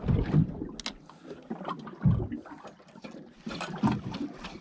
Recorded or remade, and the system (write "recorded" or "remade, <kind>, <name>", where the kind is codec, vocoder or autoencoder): recorded